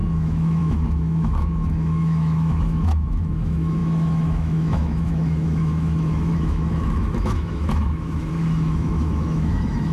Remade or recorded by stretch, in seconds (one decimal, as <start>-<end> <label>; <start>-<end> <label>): 0.0-9.9 remade